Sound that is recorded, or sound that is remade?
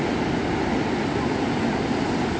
recorded